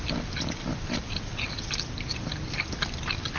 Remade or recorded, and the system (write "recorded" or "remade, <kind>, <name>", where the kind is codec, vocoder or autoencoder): recorded